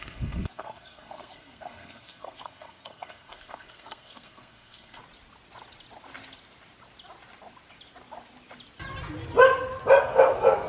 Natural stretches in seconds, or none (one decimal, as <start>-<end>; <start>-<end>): 5.0-10.0